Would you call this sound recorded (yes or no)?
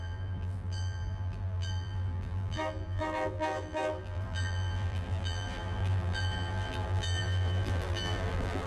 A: no